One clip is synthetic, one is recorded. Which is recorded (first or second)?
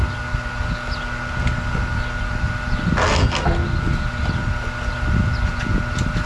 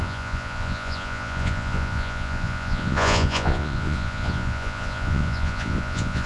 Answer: first